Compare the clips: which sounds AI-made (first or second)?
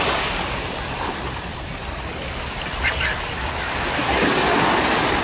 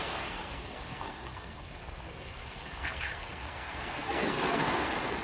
second